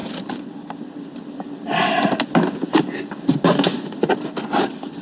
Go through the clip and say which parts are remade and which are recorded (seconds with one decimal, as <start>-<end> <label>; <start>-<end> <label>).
0.0-3.7 recorded; 3.7-4.3 remade; 4.3-5.0 recorded